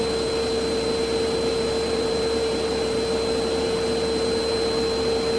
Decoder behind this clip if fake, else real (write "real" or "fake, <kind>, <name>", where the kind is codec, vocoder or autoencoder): real